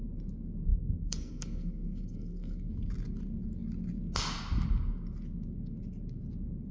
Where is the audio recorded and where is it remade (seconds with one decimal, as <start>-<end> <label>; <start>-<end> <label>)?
0.0-0.7 recorded; 0.7-2.7 remade; 2.7-6.7 recorded